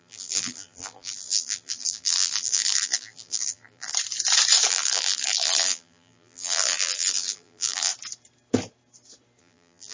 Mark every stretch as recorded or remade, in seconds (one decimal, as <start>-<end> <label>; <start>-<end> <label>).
0.0-3.9 remade; 3.9-4.7 recorded; 4.7-7.9 remade; 7.9-9.4 recorded; 9.4-9.9 remade